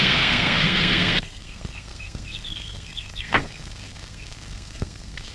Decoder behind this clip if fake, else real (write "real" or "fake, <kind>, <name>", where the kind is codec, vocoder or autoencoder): fake, codec, SNAC